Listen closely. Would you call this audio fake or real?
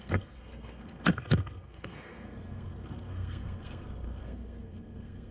fake